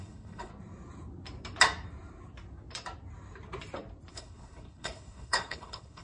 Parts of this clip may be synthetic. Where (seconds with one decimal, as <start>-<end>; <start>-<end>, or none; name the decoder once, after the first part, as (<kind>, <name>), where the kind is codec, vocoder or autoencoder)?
0.0-0.5 (codec, HILCodec); 4.1-6.0